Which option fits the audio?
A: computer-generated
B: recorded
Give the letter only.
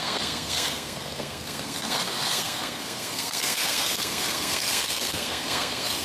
A